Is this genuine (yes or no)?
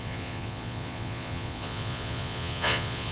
no